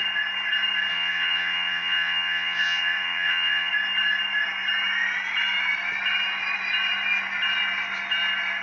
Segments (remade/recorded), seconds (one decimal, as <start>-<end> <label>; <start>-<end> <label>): 0.0-0.9 recorded; 0.9-3.7 remade; 3.7-8.6 recorded

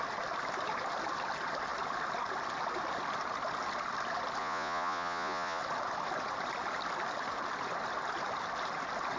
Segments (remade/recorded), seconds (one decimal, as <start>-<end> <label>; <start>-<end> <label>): 0.0-4.4 recorded; 4.4-5.6 remade; 5.6-9.2 recorded

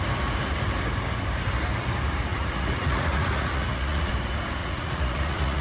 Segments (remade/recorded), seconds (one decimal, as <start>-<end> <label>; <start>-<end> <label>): 0.0-2.3 recorded; 2.3-4.1 remade; 4.1-4.6 recorded; 4.6-5.6 remade

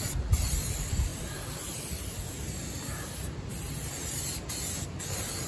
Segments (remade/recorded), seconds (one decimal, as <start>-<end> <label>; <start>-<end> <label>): 0.0-5.5 recorded

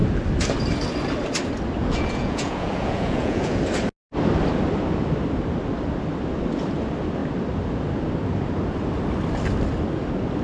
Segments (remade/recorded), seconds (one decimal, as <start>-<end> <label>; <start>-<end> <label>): 0.0-1.8 recorded; 1.8-3.6 remade; 3.6-10.4 recorded

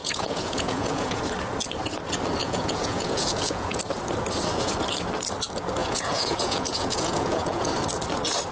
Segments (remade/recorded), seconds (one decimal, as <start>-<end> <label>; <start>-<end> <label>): 0.0-1.2 remade; 1.2-2.4 recorded; 2.4-3.8 remade; 3.8-5.8 recorded; 5.8-7.7 remade; 7.7-8.5 recorded

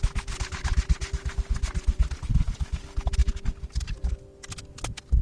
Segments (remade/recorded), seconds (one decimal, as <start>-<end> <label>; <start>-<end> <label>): 0.0-5.2 recorded

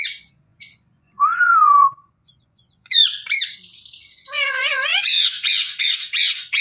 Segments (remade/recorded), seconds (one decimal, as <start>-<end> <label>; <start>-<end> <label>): 0.0-3.2 remade; 3.2-4.0 recorded; 4.0-6.6 remade